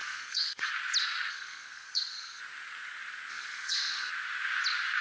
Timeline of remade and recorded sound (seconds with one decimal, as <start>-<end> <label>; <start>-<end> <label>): 0.0-0.7 remade; 0.7-1.3 recorded; 1.3-2.4 remade; 2.4-3.3 recorded; 3.3-4.1 remade; 4.1-5.0 recorded